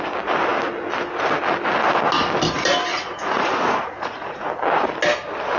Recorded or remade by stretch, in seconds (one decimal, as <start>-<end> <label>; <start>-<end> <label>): 0.0-2.9 recorded; 2.9-4.5 remade; 4.5-5.6 recorded